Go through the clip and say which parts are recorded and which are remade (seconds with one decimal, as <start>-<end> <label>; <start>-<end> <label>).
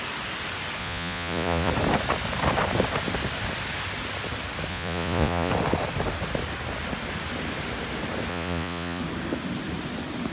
0.0-0.8 recorded; 0.8-1.7 remade; 1.7-4.7 recorded; 4.7-5.5 remade; 5.5-8.3 recorded; 8.3-9.0 remade; 9.0-10.3 recorded